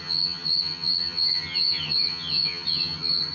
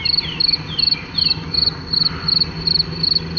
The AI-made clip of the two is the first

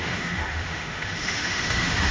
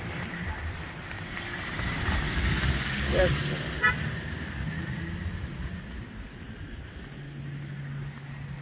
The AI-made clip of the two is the first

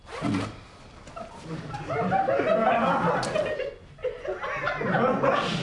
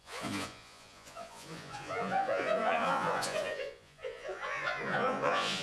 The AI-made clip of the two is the second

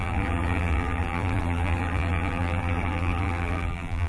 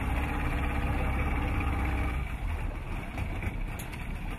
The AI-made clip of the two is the first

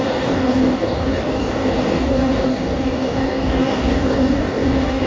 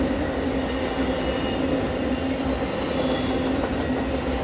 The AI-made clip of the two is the first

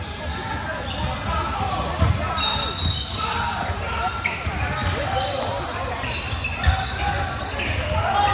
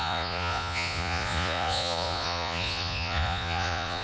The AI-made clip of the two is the second